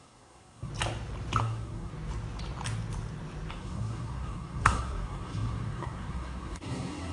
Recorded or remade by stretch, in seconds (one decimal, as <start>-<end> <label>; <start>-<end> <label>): 0.0-0.7 remade; 0.7-1.4 recorded; 1.4-1.9 remade; 1.9-3.5 recorded; 3.5-7.1 remade